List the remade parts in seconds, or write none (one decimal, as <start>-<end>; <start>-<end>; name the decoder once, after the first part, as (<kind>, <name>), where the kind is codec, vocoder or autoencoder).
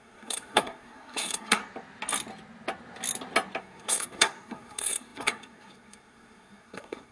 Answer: 0.0-1.6 (codec, SNAC); 3.6-7.1